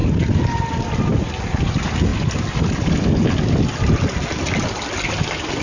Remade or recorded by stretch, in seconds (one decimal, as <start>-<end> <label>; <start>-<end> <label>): 0.0-0.7 remade; 0.7-2.1 recorded; 2.1-3.4 remade; 3.4-5.6 recorded